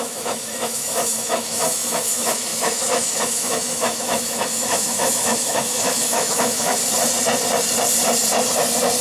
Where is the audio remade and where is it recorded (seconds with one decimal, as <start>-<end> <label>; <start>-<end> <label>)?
0.0-6.8 remade; 6.8-9.0 recorded